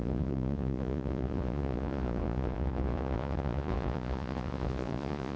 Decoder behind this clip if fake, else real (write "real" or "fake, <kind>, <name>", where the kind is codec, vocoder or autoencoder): fake, vocoder, Vocos